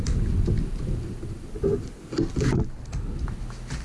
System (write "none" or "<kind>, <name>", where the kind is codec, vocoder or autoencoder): none